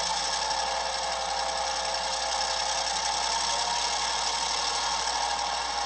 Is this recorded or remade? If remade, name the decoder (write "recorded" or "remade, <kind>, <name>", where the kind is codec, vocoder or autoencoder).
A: recorded